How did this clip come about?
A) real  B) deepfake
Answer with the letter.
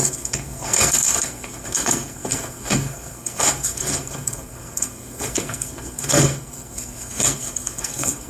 B